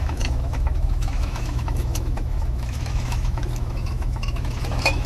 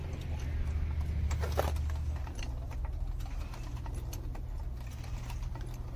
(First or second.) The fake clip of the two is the first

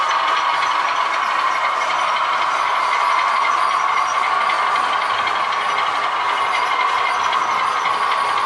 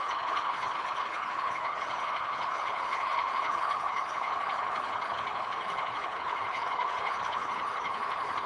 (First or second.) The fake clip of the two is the second